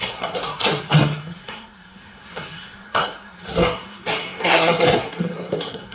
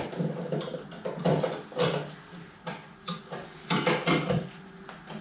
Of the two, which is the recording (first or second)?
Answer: second